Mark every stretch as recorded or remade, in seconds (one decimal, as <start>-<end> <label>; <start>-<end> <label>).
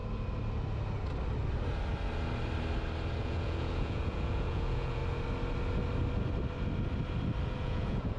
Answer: 0.0-3.2 recorded; 3.2-5.0 remade; 5.0-7.6 recorded; 7.6-8.2 remade